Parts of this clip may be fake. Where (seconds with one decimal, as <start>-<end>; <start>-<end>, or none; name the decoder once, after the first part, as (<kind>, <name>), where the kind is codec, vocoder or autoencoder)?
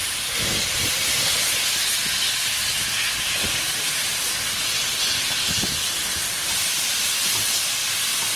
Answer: none